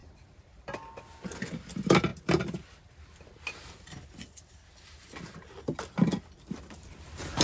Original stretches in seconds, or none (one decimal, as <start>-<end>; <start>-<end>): 0.0-7.4